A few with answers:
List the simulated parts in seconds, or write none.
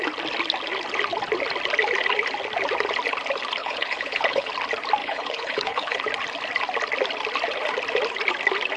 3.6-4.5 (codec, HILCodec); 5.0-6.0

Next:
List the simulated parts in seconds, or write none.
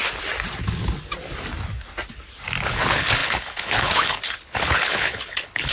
2.7-5.7 (codec, HILCodec)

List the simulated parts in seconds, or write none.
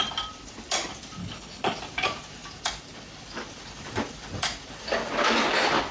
1.2-1.8 (codec, HILCodec)